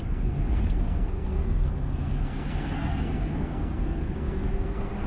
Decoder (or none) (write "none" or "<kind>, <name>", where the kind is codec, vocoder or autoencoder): codec, SNAC